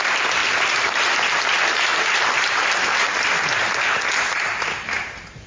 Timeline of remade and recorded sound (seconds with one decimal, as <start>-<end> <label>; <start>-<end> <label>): 0.0-5.5 recorded